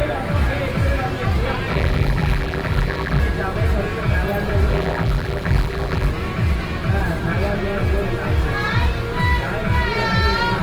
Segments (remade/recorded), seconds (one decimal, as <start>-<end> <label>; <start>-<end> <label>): 0.0-1.7 recorded; 1.7-3.2 remade; 3.2-4.7 recorded; 4.7-6.1 remade; 6.1-10.6 recorded